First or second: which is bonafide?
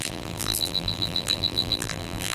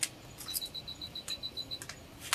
second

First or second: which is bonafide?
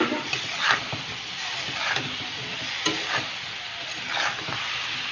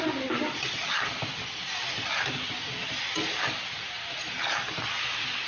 second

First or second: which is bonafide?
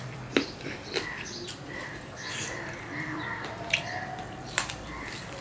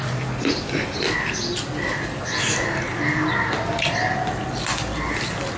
second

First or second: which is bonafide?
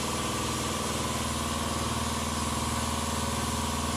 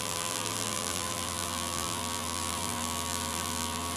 first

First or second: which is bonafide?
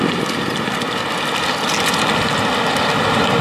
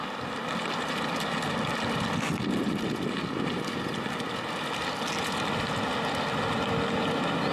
second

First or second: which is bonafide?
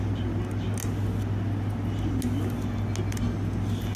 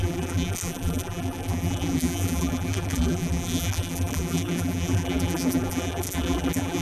first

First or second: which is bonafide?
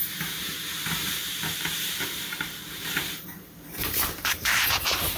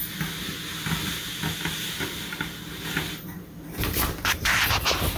second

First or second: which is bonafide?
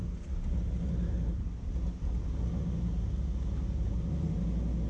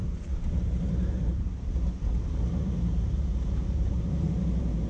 first